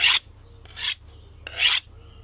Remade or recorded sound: recorded